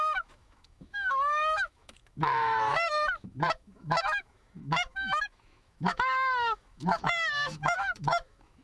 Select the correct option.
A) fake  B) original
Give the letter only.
A